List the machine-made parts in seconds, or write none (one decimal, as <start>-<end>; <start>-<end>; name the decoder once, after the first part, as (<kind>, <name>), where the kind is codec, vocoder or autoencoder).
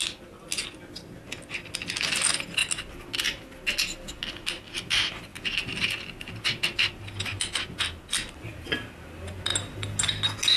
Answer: none